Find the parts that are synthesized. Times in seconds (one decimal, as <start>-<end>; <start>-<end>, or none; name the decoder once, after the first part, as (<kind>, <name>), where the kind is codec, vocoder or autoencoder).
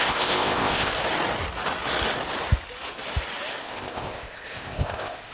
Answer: 0.0-0.9 (codec, ZipCodec); 3.6-5.3